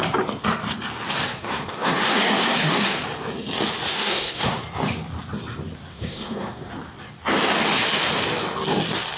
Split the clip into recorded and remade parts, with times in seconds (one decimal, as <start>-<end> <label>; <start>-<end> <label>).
0.0-1.2 recorded; 1.2-3.0 remade; 3.0-3.9 recorded; 3.9-4.6 remade; 4.6-5.9 recorded; 5.9-6.7 remade; 6.7-9.2 recorded